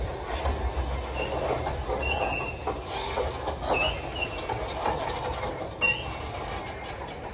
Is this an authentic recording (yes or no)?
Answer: yes